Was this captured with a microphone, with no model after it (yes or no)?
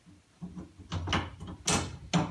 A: yes